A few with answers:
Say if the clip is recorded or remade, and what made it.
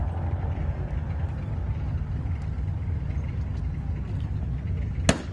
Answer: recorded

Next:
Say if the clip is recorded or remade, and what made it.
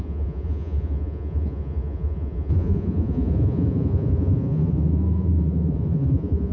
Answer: remade, vocoder, Vocos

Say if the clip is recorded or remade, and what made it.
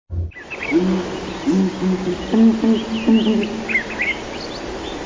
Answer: recorded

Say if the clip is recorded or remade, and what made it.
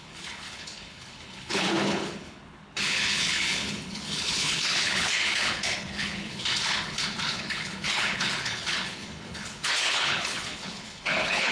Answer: remade, codec, HILCodec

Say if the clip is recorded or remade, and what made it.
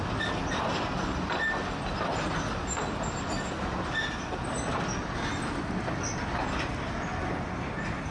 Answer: recorded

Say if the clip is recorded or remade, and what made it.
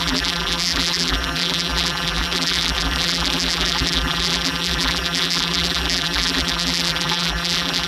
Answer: remade, vocoder, BigVGAN v2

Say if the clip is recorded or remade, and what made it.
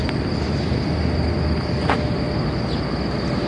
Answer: recorded